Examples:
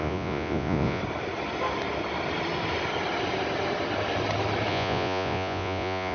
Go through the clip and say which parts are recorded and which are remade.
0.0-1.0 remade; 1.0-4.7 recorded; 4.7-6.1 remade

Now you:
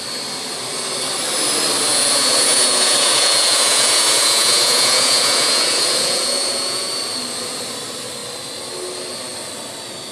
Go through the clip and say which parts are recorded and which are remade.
0.0-1.9 recorded; 1.9-6.9 remade; 6.9-10.1 recorded

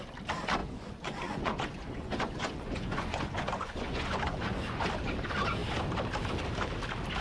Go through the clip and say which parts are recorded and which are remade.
0.0-0.6 recorded; 0.6-4.9 remade; 4.9-7.2 recorded

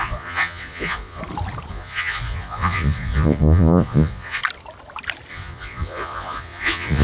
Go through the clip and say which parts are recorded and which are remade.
0.0-1.2 remade; 1.2-1.7 recorded; 1.7-4.4 remade; 4.4-5.3 recorded; 5.3-7.0 remade

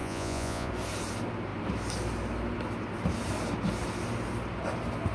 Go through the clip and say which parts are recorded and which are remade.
0.0-0.7 remade; 0.7-5.1 recorded

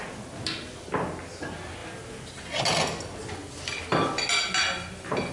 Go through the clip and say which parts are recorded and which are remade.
0.0-5.3 recorded